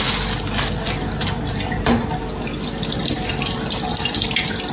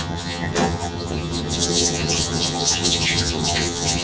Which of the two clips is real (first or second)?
first